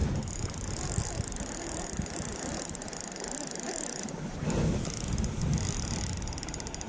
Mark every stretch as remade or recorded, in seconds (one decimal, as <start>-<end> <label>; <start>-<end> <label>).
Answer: 0.0-6.9 recorded